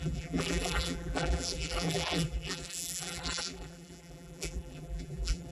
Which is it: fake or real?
fake